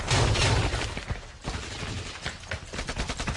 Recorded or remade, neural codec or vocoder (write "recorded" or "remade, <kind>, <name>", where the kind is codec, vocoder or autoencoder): recorded